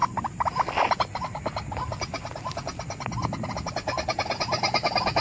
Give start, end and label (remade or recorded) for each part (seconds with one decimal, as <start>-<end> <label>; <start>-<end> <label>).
0.0-5.2 recorded